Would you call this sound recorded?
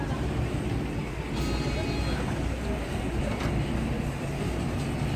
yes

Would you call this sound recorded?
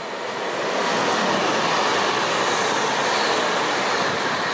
yes